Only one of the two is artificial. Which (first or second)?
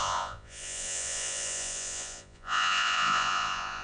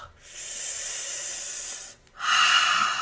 first